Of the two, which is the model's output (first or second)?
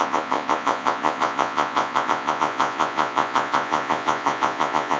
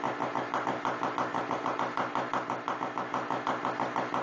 first